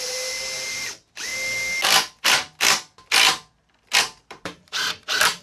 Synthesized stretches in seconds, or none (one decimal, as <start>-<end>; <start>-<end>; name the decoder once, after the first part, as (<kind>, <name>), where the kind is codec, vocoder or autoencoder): 0.0-1.3 (vocoder, BigVGAN v2); 4.0-5.4